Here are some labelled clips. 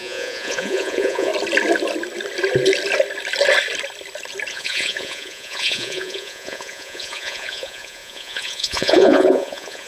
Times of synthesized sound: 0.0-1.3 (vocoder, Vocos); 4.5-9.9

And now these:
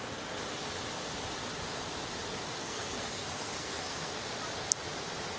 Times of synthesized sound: 2.6-4.1 (codec, SNAC)

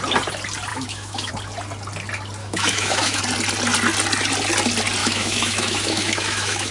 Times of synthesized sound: 0.7-1.3 (autoencoder, DAC-VAE); 2.4-3.2; 5.0-6.7